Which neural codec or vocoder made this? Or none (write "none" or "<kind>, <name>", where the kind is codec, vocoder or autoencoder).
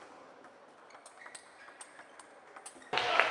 none